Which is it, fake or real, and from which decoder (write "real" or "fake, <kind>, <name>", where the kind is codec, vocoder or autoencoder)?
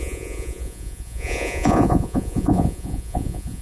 fake, vocoder, Vocos